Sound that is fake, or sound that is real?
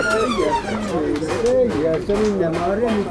real